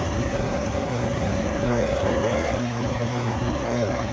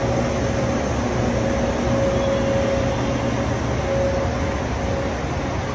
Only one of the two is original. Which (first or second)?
second